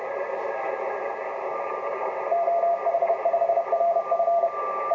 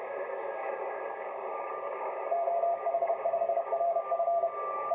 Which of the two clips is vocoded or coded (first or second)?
second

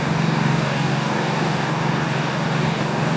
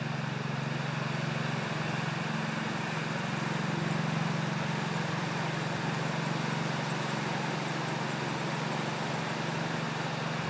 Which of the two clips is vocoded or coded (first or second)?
first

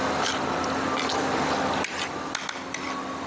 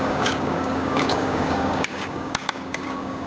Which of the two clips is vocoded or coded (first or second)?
second